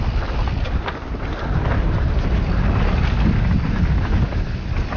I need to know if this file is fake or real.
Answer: real